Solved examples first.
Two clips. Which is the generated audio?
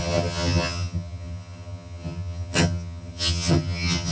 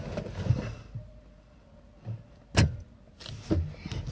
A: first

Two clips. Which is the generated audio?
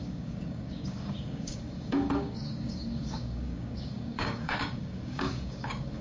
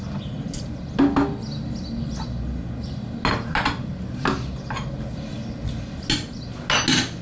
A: first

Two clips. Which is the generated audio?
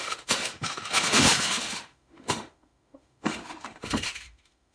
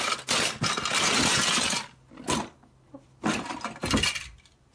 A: first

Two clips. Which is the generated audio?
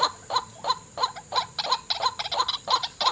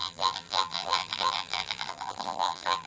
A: second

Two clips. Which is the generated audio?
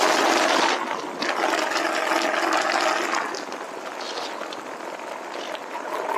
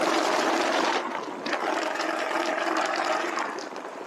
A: second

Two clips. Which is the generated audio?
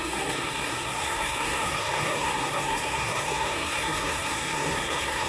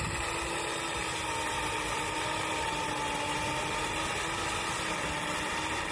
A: first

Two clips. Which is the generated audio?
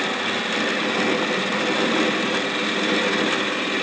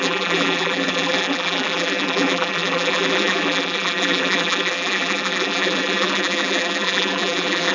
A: second